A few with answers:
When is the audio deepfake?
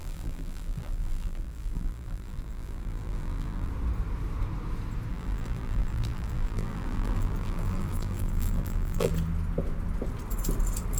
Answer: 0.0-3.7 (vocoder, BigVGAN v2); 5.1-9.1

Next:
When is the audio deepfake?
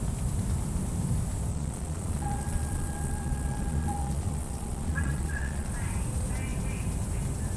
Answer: 1.5-5.7 (vocoder, Vocos)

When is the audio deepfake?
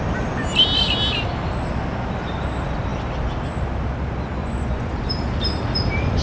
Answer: 4.4-4.9 (vocoder, Vocos)